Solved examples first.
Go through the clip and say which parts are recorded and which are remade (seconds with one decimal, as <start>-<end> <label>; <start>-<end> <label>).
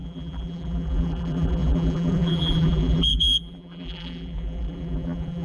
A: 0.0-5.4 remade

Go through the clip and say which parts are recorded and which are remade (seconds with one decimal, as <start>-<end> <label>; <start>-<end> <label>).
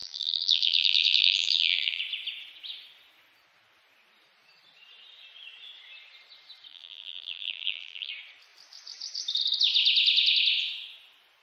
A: 0.0-2.0 remade; 2.0-6.7 recorded; 6.7-8.1 remade; 8.1-11.4 recorded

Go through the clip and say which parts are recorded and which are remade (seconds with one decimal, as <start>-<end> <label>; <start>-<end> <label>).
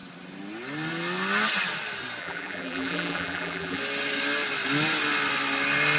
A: 0.0-2.2 recorded; 2.2-3.8 remade; 3.8-6.0 recorded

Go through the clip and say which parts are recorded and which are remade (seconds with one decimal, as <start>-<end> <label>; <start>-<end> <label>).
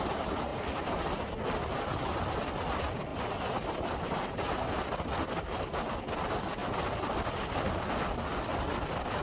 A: 0.0-0.5 recorded; 0.5-1.3 remade; 1.3-3.1 recorded; 3.1-4.7 remade; 4.7-9.2 recorded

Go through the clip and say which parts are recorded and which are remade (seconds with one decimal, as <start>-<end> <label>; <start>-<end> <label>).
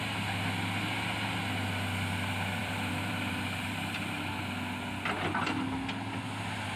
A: 0.0-2.6 recorded; 2.6-4.3 remade; 4.3-6.8 recorded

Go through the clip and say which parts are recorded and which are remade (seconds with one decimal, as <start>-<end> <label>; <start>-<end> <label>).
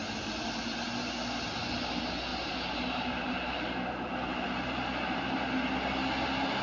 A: 0.0-2.3 recorded; 2.3-3.5 remade; 3.5-6.6 recorded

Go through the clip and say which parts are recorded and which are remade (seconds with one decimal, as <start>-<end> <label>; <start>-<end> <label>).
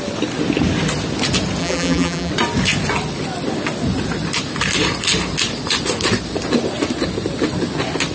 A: 0.0-1.6 recorded; 1.6-2.3 remade; 2.3-8.1 recorded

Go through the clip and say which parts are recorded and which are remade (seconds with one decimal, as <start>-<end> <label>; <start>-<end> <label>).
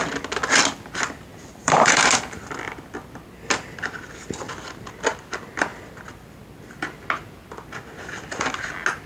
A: 0.0-1.3 recorded; 1.3-2.5 remade; 2.5-9.1 recorded